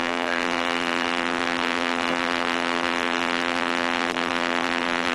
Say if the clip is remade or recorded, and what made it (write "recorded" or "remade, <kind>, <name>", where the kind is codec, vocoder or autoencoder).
remade, vocoder, BigVGAN v2